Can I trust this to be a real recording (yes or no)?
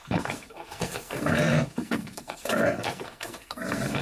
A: no